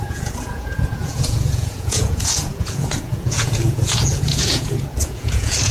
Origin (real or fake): fake